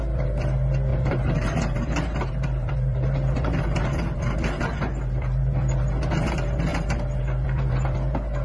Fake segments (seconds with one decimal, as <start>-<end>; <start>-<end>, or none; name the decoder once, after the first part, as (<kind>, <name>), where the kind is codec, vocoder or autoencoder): 0.9-5.9 (vocoder, BigVGAN v2); 6.7-7.2